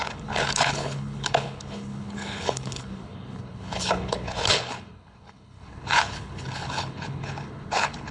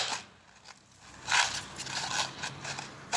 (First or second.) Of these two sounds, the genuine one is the second